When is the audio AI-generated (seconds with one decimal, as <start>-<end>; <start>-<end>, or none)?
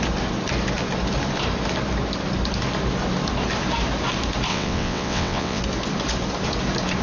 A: 4.5-5.6